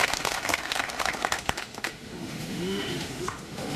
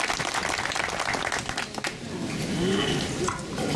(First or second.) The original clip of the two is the second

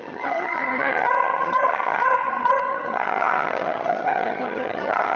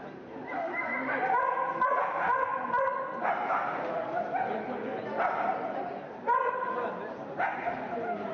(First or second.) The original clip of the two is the second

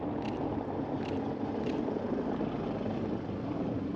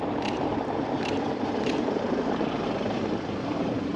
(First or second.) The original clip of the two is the first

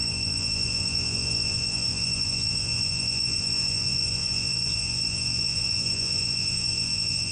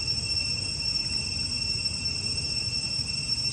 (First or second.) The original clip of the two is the second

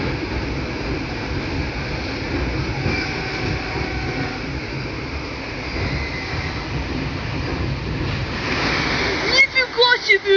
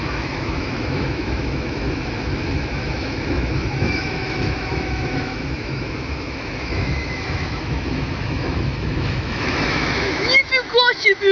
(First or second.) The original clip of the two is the first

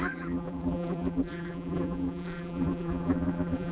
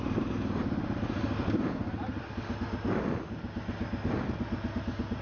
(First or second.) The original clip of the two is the second